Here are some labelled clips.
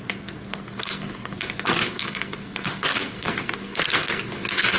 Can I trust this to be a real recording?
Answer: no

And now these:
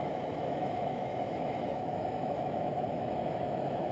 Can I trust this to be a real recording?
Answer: no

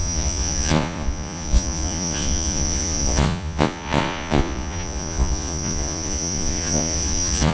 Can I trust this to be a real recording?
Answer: no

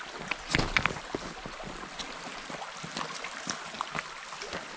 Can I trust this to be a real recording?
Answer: yes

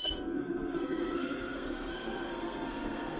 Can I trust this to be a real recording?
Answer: no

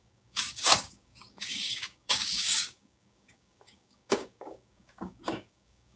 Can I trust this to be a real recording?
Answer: no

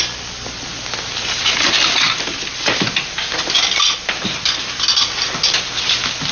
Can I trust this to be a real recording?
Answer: yes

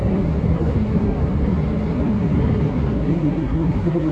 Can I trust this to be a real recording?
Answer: no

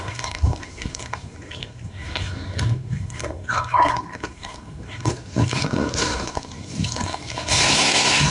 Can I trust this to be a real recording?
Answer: no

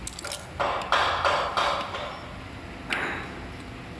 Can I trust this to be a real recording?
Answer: yes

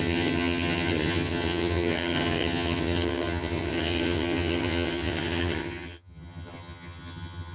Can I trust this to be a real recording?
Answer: no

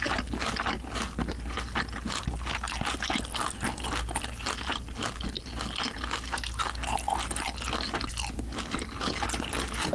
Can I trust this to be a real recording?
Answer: yes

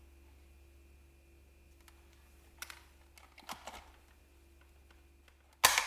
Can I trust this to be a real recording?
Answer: yes